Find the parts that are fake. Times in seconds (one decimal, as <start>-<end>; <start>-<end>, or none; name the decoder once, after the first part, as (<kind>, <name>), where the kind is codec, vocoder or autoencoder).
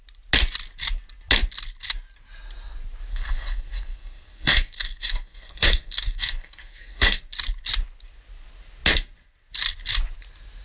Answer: 3.1-7.2 (codec, SNAC)